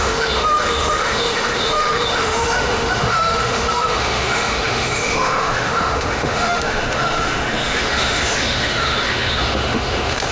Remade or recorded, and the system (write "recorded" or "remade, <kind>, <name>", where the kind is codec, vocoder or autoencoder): remade, autoencoder, DAC-VAE